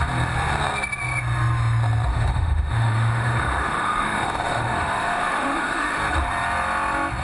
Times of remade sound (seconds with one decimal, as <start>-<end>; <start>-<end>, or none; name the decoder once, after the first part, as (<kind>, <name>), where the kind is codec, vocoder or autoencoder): 2.1-6.0 (autoencoder, DAC-VAE)